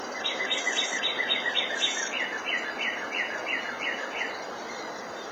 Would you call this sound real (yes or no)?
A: no